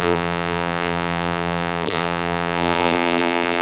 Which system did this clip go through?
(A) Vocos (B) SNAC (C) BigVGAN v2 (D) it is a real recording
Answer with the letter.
C